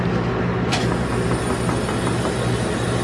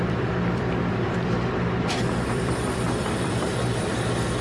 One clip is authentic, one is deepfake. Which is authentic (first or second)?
first